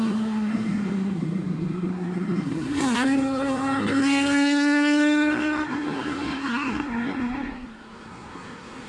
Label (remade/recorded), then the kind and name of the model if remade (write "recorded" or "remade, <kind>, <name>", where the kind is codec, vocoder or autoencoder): remade, codec, SNAC